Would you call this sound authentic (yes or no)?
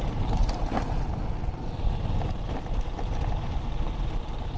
yes